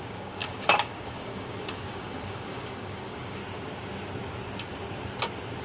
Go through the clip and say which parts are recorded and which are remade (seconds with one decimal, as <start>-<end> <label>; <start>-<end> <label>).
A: 0.0-3.4 remade; 3.4-5.6 recorded